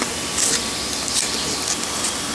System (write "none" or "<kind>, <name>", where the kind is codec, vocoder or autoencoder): none